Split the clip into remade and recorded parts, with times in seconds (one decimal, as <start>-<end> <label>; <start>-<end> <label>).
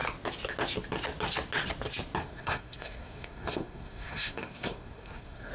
0.0-2.2 recorded; 2.2-5.5 remade